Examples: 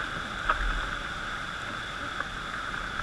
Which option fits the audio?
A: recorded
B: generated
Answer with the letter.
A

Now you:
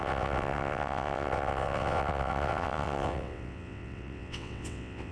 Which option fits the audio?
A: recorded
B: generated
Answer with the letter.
B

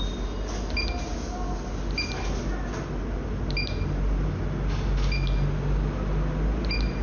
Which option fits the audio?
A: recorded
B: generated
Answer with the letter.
A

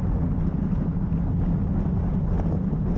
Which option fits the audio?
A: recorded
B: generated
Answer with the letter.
A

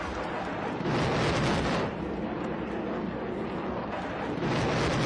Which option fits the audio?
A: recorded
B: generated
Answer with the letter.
A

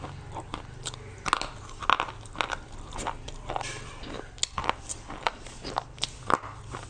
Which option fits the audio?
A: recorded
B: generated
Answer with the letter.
A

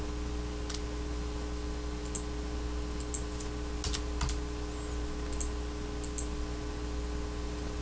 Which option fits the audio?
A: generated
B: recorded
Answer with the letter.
B